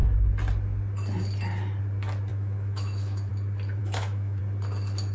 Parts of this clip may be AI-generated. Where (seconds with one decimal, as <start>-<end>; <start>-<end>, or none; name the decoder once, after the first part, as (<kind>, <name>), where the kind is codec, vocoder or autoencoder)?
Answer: 2.3-3.3 (autoencoder, DAC-VAE); 3.8-4.4